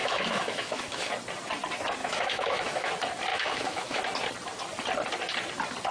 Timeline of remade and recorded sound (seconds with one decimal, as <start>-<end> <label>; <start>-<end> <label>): 0.0-1.1 remade; 1.1-2.0 recorded; 2.0-2.9 remade; 2.9-3.3 recorded; 3.3-4.0 remade; 4.0-5.9 recorded